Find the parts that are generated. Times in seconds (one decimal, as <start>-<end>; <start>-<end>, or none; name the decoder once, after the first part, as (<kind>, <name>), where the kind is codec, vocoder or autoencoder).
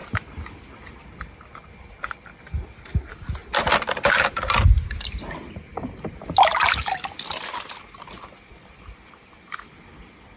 none